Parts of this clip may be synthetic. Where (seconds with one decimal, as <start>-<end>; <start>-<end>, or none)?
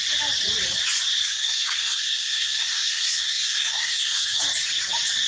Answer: 1.2-4.4